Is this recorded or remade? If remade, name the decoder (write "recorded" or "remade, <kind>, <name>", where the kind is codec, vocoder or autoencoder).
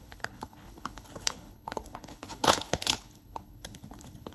remade, codec, HILCodec